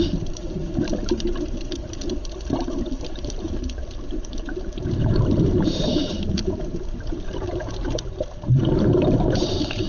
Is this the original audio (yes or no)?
no